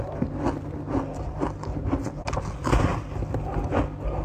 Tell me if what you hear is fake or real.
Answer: real